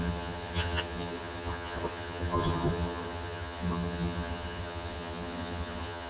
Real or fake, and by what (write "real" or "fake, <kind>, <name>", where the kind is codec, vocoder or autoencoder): fake, vocoder, HiFi-GAN